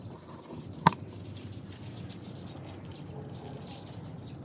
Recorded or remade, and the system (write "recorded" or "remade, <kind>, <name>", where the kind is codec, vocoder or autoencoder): recorded